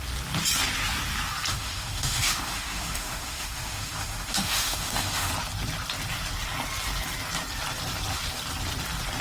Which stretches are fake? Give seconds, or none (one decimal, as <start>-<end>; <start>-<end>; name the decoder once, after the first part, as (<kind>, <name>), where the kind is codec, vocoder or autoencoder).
1.5-5.3 (autoencoder, DAC-VAE)